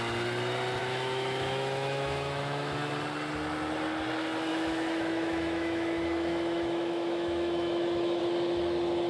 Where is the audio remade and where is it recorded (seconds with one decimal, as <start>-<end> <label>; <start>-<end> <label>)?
0.0-0.8 recorded; 0.8-2.9 remade; 2.9-4.5 recorded; 4.5-8.2 remade; 8.2-9.1 recorded